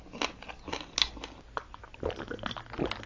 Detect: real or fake real